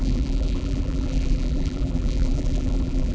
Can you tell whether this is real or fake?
fake